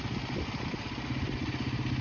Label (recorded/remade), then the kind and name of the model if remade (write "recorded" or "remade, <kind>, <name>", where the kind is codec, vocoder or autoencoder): recorded